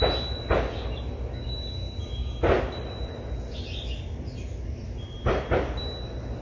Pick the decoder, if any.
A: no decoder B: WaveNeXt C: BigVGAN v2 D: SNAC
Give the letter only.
A